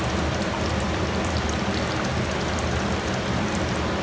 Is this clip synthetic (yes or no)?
no